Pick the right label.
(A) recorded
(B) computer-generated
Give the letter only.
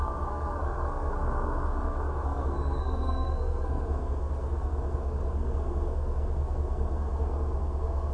B